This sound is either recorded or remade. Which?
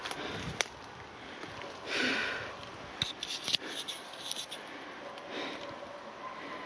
recorded